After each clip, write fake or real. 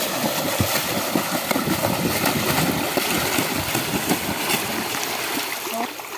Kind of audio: real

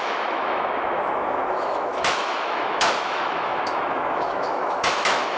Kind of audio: fake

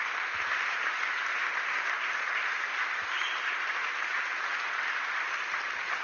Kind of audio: real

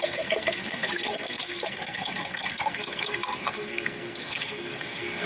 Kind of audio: fake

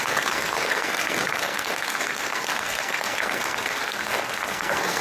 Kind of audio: fake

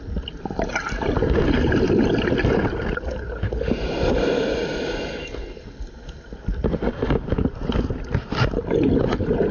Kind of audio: real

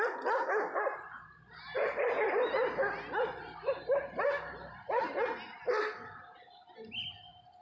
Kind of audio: real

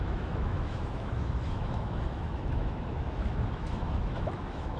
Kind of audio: fake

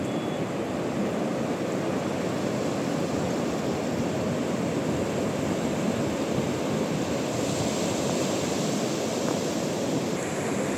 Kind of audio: real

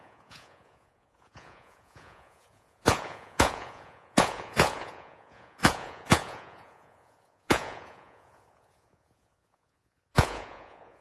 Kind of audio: fake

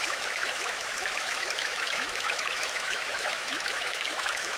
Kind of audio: fake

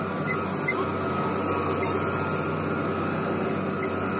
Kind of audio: real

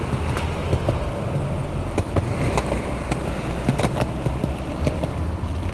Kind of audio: real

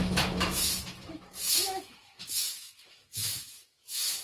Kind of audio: fake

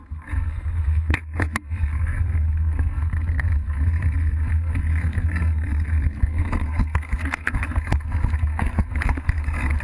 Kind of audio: fake